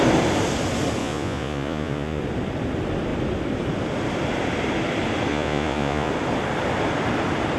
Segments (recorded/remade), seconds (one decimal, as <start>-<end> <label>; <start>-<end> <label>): 0.0-1.0 recorded; 1.0-2.2 remade; 2.2-5.3 recorded; 5.3-6.1 remade; 6.1-7.6 recorded